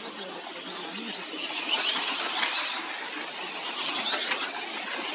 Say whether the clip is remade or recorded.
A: recorded